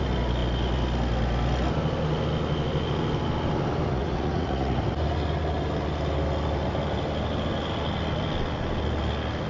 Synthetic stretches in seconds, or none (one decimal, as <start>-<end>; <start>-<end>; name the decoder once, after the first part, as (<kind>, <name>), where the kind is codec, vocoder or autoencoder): 3.9-4.8 (vocoder, Vocos)